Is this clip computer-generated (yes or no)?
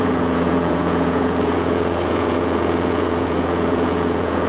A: yes